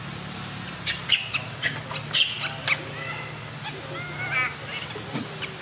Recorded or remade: recorded